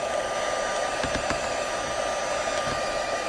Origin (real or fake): real